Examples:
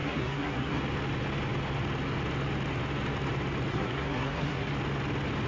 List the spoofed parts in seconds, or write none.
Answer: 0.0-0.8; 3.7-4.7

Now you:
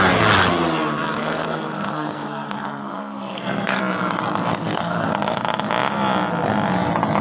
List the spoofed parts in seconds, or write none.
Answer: 1.2-3.8; 4.5-5.1

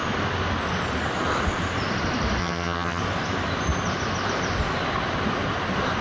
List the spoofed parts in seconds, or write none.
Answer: 2.4-3.0